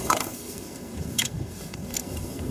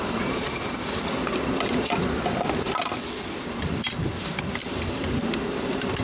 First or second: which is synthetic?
first